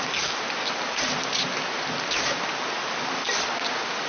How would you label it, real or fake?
real